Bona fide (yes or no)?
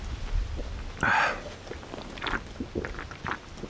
yes